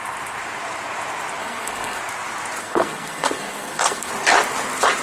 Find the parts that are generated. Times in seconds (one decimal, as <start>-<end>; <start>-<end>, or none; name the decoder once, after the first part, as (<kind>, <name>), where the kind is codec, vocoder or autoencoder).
1.4-2.0 (codec, SNAC); 2.6-4.1